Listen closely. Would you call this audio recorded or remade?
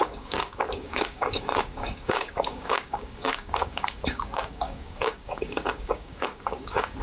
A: remade